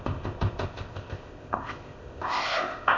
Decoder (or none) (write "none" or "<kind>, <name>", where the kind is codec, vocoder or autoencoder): codec, ZipCodec